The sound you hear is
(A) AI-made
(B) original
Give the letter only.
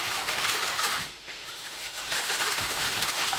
A